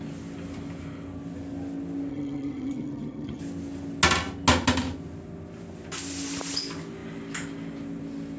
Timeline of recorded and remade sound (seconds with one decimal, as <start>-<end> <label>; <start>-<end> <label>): 0.0-2.1 recorded; 2.1-3.4 remade; 3.4-8.4 recorded